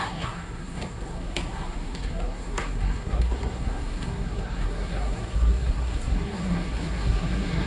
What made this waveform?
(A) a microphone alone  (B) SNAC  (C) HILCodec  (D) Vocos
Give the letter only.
B